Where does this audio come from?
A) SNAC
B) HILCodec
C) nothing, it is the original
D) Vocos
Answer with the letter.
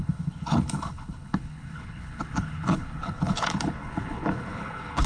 B